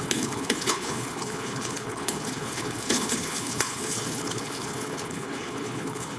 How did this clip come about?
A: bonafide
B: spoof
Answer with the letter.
B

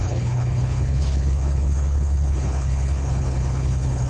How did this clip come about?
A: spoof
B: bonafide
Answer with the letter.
A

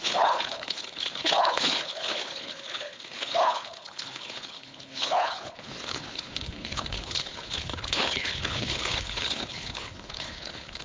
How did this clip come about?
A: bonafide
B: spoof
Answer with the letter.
B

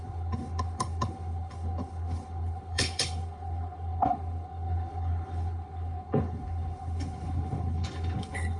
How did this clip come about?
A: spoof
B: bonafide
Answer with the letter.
A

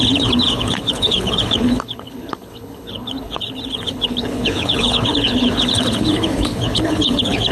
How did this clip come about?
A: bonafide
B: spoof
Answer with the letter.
B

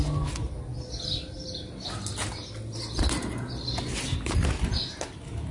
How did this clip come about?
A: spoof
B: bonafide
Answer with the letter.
B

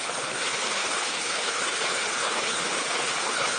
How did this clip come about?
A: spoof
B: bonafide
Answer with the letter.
A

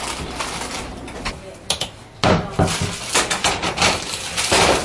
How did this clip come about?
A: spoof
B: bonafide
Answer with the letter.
B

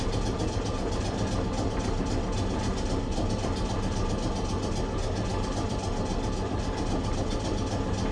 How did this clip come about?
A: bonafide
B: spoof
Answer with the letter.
A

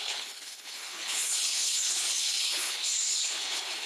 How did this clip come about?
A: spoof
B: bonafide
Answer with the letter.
A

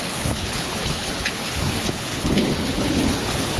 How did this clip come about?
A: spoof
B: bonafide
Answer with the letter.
A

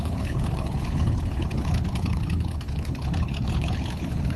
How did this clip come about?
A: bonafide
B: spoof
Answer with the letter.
B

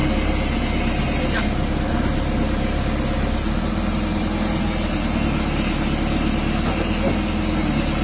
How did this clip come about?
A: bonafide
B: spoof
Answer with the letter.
A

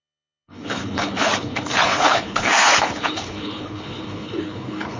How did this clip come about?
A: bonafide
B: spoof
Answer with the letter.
B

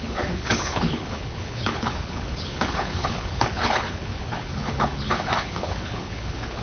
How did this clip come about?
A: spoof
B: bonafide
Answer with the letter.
A